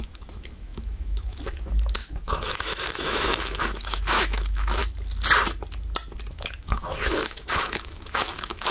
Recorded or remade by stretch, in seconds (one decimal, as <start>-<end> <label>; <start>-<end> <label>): 0.0-4.8 remade; 4.8-6.3 recorded; 6.3-8.7 remade